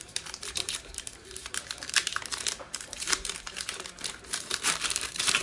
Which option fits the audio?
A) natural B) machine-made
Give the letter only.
B